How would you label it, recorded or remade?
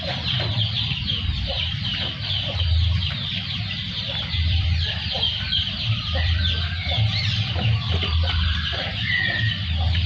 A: remade